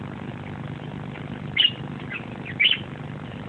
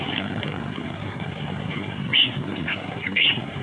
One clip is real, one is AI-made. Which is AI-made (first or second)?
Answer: second